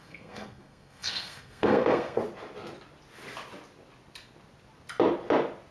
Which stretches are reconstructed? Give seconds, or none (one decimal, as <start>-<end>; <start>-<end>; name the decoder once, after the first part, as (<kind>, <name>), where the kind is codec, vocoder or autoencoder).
0.0-2.2 (codec, SNAC)